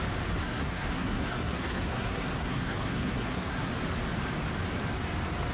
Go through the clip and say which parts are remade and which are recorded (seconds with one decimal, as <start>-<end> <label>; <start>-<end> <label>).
0.0-0.4 recorded; 0.4-3.7 remade; 3.7-5.5 recorded